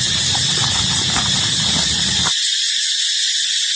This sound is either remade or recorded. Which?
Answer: recorded